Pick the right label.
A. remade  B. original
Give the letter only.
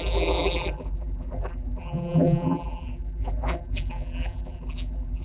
A